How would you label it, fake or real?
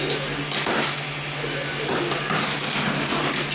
real